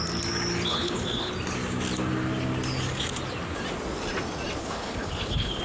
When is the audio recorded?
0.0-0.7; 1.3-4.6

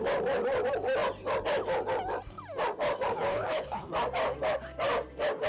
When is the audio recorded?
0.0-3.3; 3.9-5.5

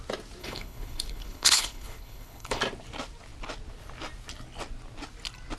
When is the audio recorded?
0.0-0.4; 2.6-5.6

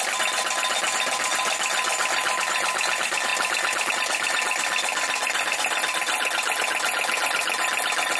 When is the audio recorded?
0.0-8.2

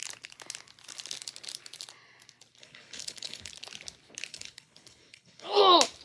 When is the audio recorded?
0.0-2.6; 3.5-4.3; 5.6-6.0